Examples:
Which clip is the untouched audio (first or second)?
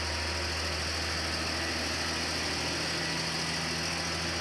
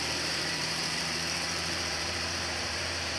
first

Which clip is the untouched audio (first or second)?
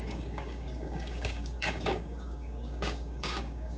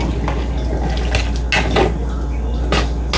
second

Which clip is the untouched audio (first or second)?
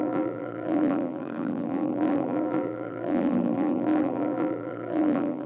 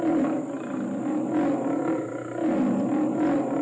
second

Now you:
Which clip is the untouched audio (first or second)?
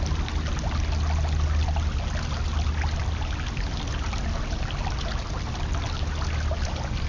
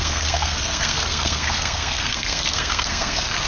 first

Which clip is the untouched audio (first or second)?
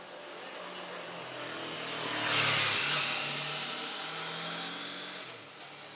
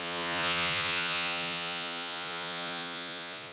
first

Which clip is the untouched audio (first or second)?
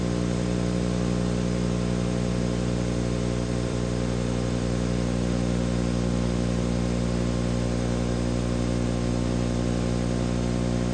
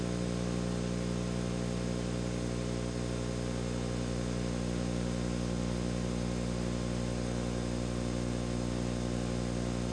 second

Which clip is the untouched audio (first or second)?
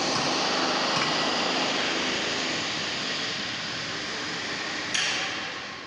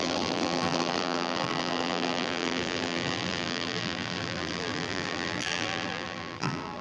first